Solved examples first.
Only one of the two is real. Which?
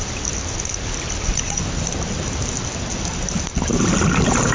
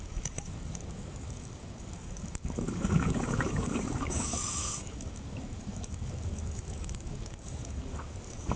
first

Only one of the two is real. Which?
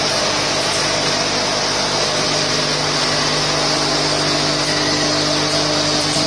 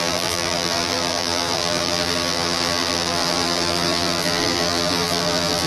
first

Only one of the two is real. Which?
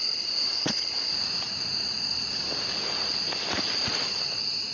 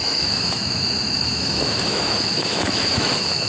first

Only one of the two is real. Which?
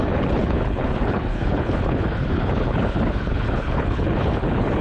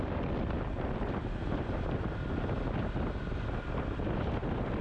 second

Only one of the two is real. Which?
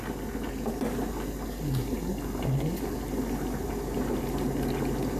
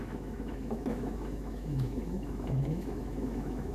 first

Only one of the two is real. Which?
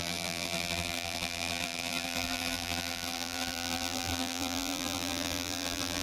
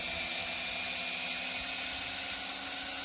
second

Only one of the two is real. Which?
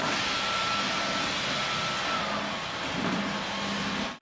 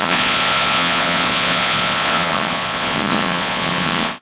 first